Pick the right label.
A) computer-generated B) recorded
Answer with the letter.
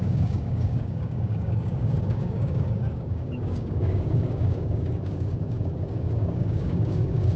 A